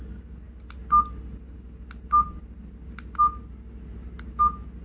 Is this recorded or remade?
recorded